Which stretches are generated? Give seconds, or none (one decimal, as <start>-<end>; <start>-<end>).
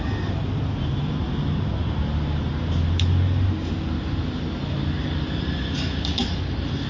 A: none